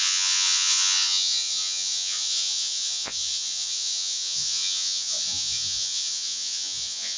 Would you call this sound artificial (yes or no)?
yes